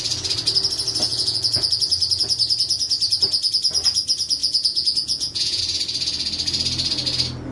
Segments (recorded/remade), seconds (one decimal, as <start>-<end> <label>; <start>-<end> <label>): 0.0-1.1 recorded; 1.1-1.7 remade; 1.7-4.4 recorded; 4.4-5.6 remade; 5.6-7.5 recorded